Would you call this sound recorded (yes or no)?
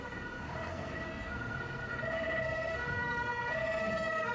no